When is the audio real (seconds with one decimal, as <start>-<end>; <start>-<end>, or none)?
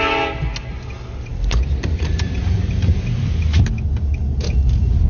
0.0-1.3; 3.4-5.1